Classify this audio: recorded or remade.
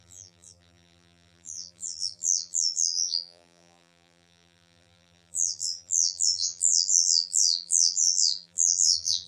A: remade